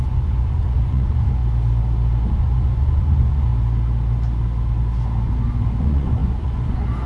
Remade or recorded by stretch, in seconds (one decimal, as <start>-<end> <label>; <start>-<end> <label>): 0.0-1.4 remade; 1.4-2.3 recorded; 2.3-3.5 remade; 3.5-5.8 recorded; 5.8-7.1 remade